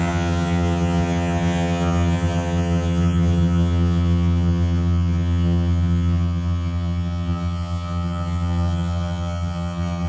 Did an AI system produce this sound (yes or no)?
yes